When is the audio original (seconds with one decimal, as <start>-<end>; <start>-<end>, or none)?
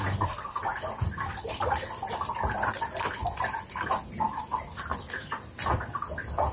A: 0.0-6.5